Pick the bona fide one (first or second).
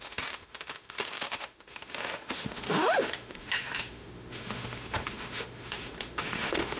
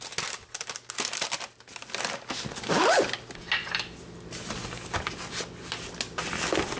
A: second